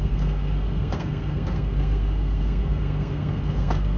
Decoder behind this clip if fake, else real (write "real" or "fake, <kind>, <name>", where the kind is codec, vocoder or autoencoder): fake, codec, SNAC